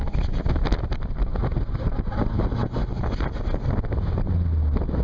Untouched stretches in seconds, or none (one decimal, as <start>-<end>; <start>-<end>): 0.0-5.0